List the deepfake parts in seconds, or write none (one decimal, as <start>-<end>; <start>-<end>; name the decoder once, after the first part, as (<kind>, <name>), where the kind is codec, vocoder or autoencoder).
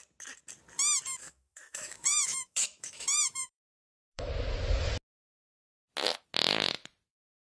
1.2-4.3 (autoencoder, DAC-VAE)